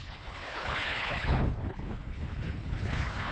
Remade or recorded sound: remade